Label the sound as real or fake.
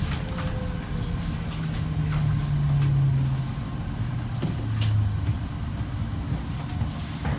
real